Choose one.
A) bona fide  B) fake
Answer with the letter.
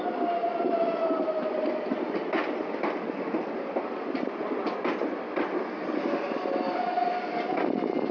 A